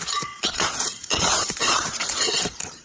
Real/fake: fake